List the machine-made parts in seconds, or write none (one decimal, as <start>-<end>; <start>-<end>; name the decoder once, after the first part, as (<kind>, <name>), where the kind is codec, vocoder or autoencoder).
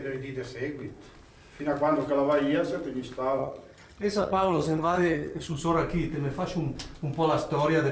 3.4-5.6 (vocoder, HiFi-GAN)